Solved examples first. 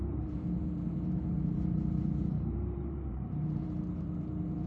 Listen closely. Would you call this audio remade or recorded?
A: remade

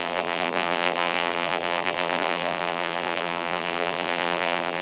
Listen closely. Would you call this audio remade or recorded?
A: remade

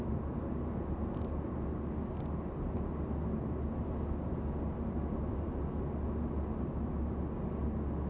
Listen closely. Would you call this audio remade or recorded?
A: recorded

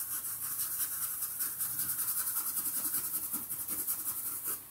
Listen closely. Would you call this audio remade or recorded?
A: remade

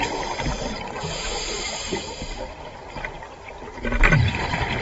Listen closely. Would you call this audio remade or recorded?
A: recorded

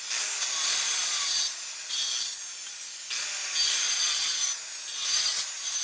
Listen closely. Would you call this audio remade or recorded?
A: recorded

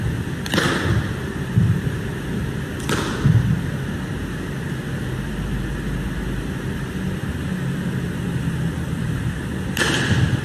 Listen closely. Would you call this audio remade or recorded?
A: recorded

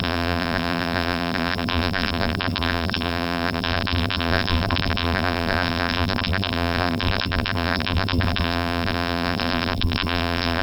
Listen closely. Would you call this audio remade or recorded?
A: remade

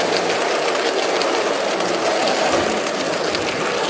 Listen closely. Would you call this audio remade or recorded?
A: recorded